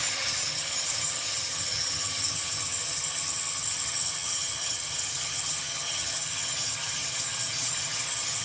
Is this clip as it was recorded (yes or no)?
no